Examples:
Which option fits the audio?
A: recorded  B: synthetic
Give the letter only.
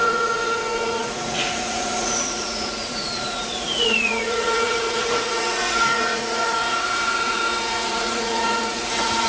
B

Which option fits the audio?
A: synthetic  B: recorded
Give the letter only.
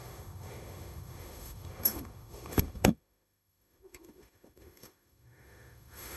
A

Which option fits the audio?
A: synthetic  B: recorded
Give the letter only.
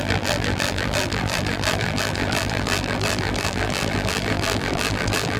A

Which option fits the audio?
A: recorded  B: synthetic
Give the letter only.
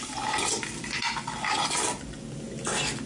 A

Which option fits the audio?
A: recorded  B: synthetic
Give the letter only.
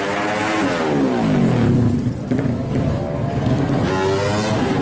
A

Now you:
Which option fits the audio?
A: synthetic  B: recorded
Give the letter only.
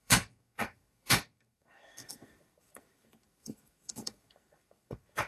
A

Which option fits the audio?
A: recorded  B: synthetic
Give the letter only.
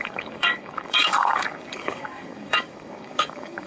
B